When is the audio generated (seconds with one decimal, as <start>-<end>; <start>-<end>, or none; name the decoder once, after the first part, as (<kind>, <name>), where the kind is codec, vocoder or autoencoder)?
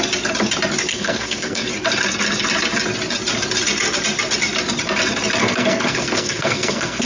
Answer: 0.9-1.7 (codec, SNAC); 5.4-7.1